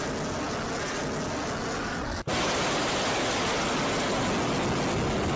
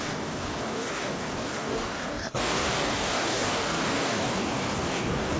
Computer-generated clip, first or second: second